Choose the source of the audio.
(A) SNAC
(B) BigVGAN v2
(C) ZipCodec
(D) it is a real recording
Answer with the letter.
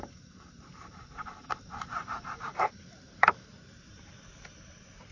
B